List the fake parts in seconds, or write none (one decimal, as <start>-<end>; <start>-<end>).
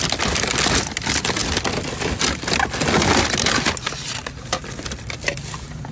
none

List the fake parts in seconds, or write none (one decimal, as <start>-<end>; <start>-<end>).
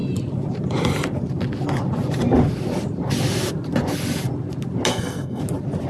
4.9-5.4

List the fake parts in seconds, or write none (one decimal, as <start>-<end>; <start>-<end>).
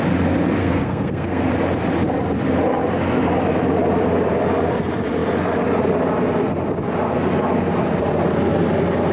0.6-1.5